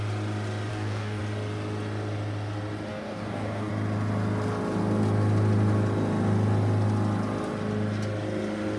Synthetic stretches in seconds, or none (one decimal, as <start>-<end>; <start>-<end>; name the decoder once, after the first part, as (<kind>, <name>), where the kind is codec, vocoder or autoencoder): 0.7-1.2 (codec, DAC); 2.9-3.7